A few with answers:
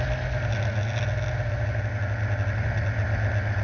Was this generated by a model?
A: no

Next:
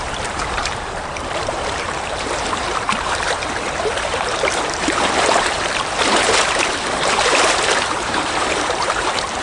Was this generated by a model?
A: yes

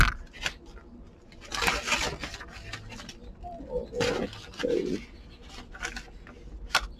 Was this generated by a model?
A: no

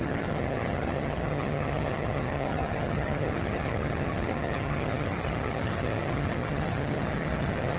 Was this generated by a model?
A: yes